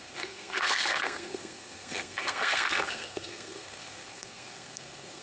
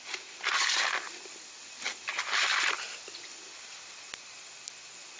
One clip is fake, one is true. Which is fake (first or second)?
first